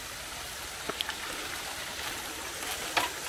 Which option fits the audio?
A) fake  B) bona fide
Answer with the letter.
B